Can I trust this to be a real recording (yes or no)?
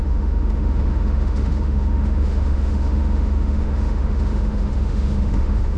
no